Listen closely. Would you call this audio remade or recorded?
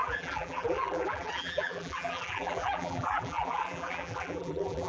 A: remade